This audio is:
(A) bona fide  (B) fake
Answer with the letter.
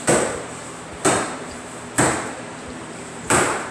B